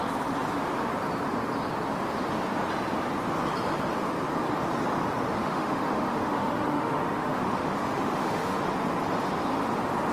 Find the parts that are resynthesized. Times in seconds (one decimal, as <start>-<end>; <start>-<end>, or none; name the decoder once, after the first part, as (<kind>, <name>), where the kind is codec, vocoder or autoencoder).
5.4-8.6 (autoencoder, DAC-VAE)